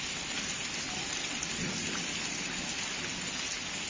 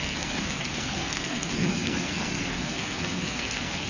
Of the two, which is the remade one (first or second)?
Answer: second